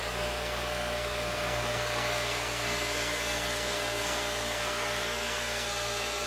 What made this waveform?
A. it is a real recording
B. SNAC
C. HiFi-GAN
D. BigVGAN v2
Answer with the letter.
B